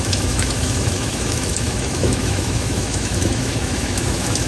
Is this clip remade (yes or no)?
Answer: yes